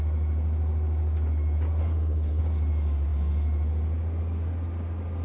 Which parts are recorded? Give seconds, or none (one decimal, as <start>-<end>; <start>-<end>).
0.0-1.8; 2.4-5.2